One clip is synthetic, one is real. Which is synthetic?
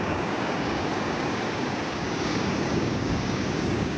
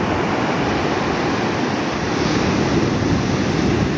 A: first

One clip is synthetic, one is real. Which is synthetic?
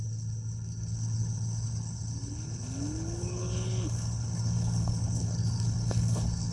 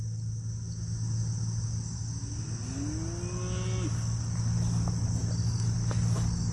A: first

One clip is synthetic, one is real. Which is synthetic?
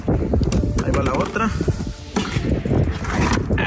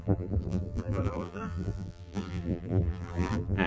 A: second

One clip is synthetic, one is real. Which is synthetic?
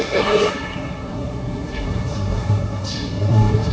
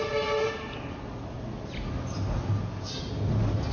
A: first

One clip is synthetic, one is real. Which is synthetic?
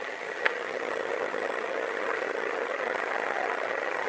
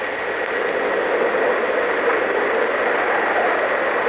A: first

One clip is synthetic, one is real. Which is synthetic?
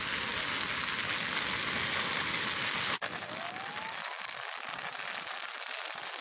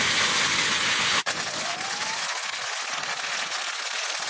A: second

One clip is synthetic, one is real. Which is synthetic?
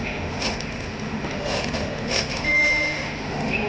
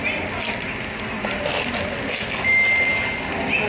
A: first